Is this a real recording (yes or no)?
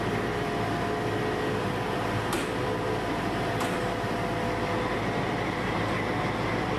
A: yes